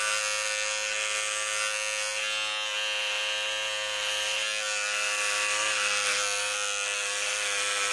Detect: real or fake real